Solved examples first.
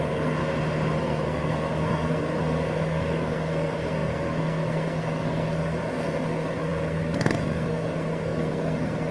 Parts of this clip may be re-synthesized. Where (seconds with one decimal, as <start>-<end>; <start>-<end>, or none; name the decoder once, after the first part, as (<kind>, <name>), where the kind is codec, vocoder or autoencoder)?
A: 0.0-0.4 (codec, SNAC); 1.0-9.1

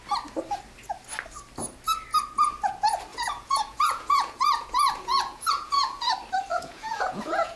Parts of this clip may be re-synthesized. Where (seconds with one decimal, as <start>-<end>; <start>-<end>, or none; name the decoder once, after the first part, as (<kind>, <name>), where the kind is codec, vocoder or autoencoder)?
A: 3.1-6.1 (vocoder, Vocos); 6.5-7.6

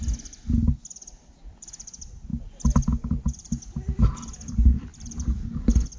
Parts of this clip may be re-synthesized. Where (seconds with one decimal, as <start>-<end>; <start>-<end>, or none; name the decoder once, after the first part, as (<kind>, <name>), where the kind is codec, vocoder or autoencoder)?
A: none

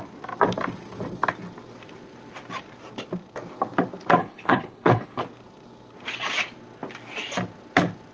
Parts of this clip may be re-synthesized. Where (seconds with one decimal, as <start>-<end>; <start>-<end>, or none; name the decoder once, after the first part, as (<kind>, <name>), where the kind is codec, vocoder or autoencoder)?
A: 4.2-5.2 (codec, HILCodec)

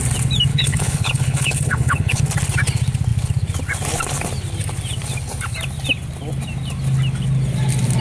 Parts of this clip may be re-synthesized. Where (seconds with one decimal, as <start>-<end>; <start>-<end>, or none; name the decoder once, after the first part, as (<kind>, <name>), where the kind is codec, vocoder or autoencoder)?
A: 0.5-2.2 (codec, HILCodec)

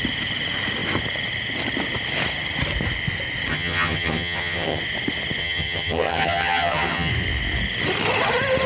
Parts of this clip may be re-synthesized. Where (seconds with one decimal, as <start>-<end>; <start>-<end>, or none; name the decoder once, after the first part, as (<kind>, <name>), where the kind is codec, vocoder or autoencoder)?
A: 3.5-4.8 (vocoder, HiFi-GAN); 5.4-7.1

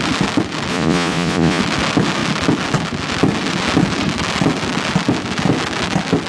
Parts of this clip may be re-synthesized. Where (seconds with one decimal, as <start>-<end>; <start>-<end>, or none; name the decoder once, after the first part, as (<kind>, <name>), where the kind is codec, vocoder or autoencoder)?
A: 0.7-1.6 (vocoder, Vocos)

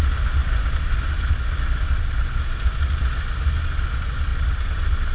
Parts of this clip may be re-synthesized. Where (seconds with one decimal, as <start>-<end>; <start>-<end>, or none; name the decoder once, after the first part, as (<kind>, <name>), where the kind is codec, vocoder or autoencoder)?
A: none